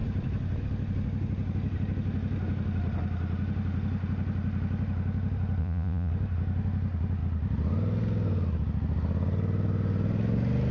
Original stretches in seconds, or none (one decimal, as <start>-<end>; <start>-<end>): 0.0-5.6; 6.1-10.7